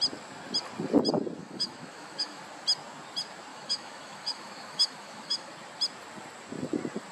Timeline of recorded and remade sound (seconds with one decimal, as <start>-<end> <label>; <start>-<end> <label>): 0.0-1.4 recorded; 1.4-2.4 remade; 2.4-3.5 recorded; 3.5-5.5 remade; 5.5-7.1 recorded